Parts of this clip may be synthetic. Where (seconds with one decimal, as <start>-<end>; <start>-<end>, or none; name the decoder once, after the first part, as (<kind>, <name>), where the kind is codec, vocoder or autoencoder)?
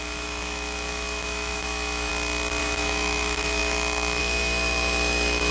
0.0-2.1 (autoencoder, DAC-VAE); 2.6-5.5